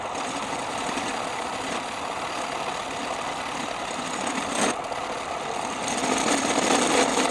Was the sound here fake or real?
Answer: fake